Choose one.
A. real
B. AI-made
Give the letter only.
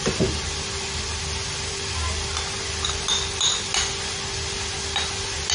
A